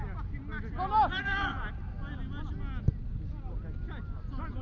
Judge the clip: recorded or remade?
recorded